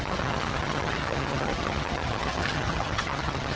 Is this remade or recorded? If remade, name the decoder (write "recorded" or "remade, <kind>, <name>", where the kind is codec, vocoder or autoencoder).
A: remade, vocoder, HiFi-GAN